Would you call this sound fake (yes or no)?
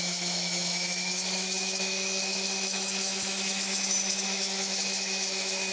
yes